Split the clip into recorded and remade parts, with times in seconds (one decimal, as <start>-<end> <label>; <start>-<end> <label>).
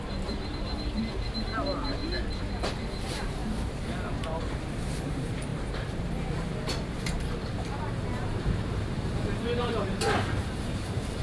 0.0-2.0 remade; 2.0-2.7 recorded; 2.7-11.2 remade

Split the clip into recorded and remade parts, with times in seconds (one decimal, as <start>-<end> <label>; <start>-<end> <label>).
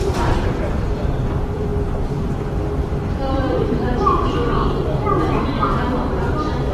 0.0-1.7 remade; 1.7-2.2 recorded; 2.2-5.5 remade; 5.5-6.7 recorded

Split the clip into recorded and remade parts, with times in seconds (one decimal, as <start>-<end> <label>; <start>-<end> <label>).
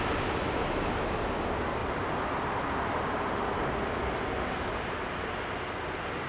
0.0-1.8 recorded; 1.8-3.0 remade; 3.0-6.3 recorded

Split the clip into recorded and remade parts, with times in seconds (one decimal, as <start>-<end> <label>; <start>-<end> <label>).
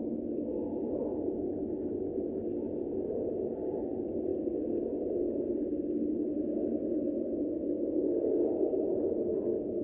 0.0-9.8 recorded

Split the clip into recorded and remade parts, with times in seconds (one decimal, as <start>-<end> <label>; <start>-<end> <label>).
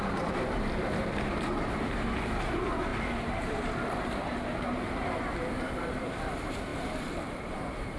0.0-8.0 remade